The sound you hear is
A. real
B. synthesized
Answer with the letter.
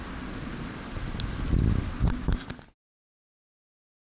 A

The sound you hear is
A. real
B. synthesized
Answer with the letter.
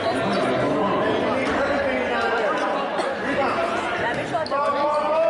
A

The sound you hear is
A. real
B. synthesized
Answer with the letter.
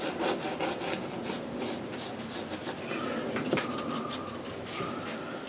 A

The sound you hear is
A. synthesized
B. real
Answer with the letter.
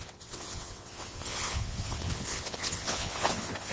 A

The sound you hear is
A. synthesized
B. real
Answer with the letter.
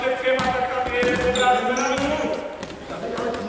B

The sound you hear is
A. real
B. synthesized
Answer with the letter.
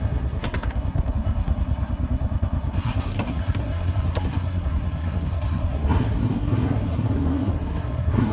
B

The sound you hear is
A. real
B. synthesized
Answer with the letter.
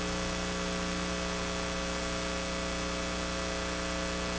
A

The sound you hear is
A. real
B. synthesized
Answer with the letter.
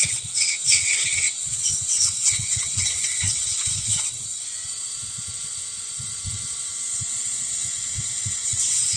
B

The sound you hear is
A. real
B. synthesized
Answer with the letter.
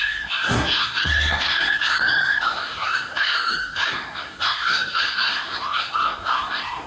B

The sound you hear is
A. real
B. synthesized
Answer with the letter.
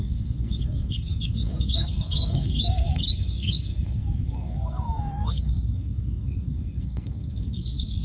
B